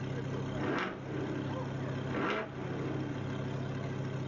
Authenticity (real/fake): real